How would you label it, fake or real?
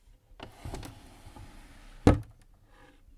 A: real